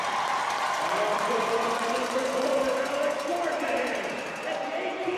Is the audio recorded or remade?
recorded